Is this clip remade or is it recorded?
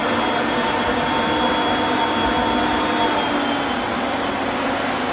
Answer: recorded